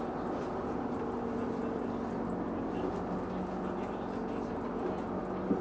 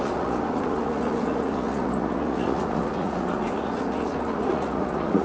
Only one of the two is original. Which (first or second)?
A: first